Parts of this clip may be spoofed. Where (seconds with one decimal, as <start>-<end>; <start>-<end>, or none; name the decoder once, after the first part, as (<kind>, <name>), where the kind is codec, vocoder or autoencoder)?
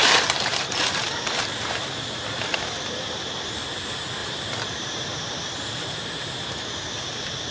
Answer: 0.0-2.4 (vocoder, BigVGAN v2); 4.2-5.9